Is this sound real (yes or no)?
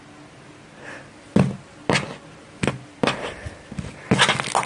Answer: yes